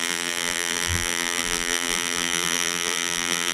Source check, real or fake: fake